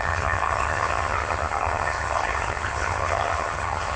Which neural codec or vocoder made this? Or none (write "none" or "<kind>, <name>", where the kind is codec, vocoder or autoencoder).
vocoder, HiFi-GAN